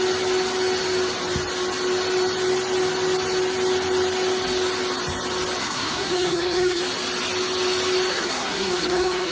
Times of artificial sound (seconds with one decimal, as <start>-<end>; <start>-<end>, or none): 5.6-6.8; 8.1-9.3

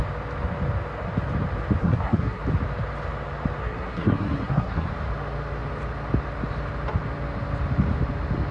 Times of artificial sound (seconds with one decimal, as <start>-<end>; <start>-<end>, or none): 1.8-2.4; 3.6-4.9

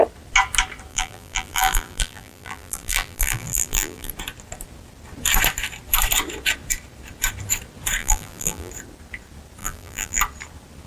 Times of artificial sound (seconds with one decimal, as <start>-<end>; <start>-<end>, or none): 0.9-4.1; 8.0-8.7; 9.6-10.2

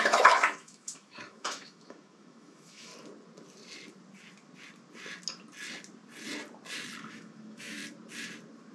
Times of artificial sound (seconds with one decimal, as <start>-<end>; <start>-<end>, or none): 0.0-2.9; 7.1-7.8

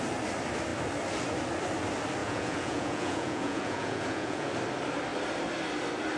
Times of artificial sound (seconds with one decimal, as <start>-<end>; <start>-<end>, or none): 2.2-4.5